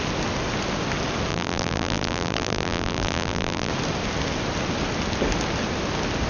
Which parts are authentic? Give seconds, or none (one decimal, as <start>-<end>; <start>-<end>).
0.0-1.3; 3.7-6.3